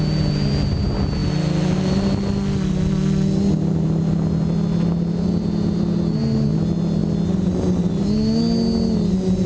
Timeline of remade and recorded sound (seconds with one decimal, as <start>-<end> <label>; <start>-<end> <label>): 0.0-9.5 recorded